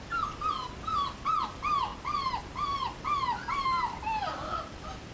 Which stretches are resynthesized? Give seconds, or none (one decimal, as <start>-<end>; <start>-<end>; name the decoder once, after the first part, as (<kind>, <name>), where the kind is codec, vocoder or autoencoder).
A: none